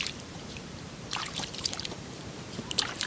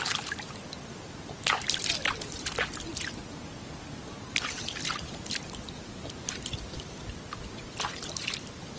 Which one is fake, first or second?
first